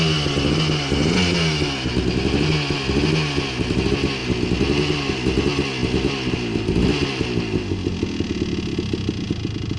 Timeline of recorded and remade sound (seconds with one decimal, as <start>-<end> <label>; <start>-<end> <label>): 0.0-9.8 recorded